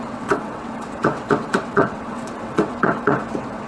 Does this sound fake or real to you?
fake